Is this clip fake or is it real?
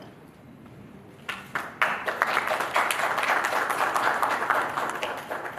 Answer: real